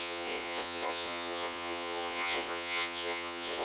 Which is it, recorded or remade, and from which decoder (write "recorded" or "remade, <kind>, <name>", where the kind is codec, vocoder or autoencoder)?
remade, vocoder, Vocos